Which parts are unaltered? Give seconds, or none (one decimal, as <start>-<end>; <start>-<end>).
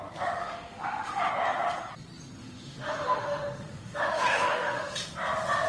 0.0-0.4; 1.3-2.4; 4.9-5.7